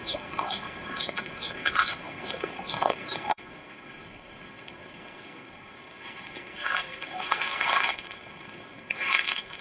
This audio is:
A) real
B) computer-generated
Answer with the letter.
B